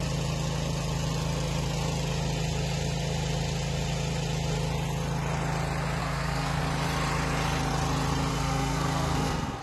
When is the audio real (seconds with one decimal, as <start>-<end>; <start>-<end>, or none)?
0.0-6.0; 6.6-8.3